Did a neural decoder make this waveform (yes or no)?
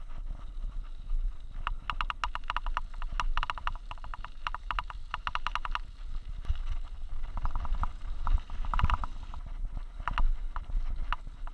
no